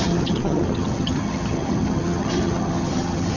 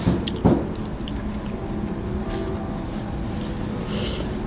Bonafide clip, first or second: second